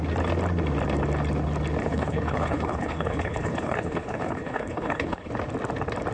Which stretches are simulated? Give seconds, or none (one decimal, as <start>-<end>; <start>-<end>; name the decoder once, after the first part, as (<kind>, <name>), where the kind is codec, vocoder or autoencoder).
1.8-5.3 (codec, HILCodec)